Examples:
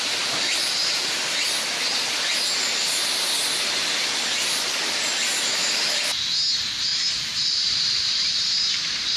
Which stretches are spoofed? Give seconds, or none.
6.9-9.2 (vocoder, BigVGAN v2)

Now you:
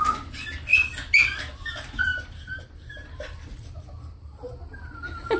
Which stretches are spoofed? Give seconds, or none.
2.1-4.5 (vocoder, BigVGAN v2)

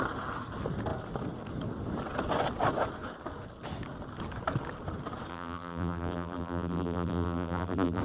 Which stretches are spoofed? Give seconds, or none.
5.3-8.0 (vocoder, BigVGAN v2)

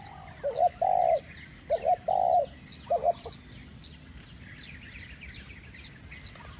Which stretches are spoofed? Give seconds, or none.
1.0-2.4 (vocoder, BigVGAN v2); 3.7-5.9

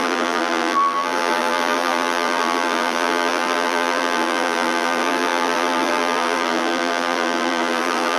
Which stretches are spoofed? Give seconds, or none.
0.0-8.2 (vocoder, BigVGAN v2)

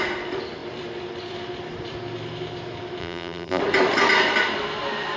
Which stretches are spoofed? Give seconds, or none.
3.0-3.6 (vocoder, BigVGAN v2)